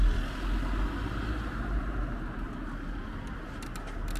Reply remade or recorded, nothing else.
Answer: recorded